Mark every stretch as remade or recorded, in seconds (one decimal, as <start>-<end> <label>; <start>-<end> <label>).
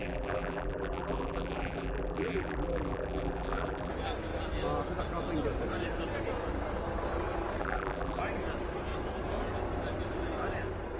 0.0-3.9 remade; 3.9-7.6 recorded; 7.6-8.2 remade; 8.2-11.0 recorded